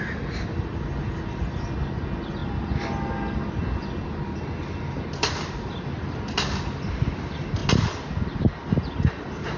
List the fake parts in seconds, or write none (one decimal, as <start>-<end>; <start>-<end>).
none